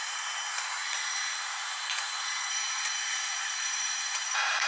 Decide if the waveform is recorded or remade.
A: remade